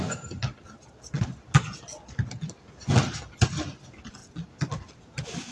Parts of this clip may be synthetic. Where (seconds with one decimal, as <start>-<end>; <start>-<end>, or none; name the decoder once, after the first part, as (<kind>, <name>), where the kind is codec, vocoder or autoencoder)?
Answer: none